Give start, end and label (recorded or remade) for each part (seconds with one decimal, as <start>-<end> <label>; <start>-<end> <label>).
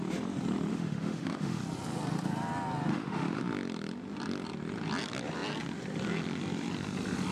0.0-0.7 recorded; 0.7-1.6 remade; 1.6-2.9 recorded; 2.9-3.4 remade; 3.4-7.3 recorded